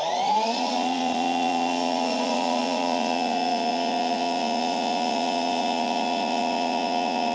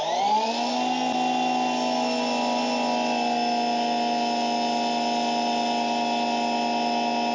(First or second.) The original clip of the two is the second